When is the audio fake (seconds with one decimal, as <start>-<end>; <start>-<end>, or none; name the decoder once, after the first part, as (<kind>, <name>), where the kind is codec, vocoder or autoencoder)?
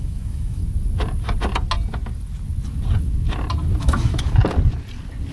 0.0-0.6 (autoencoder, DAC-VAE); 3.8-4.4